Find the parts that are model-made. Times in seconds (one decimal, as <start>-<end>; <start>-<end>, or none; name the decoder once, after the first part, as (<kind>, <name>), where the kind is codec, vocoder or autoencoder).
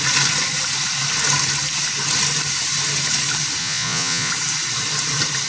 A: 3.6-4.3 (vocoder, Vocos)